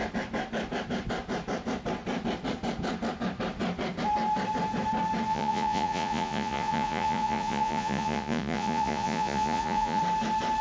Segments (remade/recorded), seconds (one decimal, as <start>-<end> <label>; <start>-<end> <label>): 0.0-5.3 recorded; 5.3-10.0 remade; 10.0-10.6 recorded